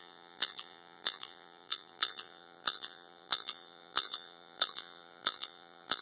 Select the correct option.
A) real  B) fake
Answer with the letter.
B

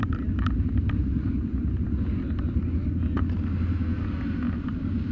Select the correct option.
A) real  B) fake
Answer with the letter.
A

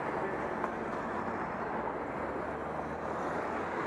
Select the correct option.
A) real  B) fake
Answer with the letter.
A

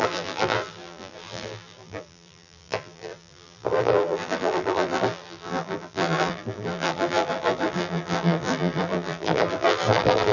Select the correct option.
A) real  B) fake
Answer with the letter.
B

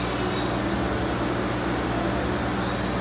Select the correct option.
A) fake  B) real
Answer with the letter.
B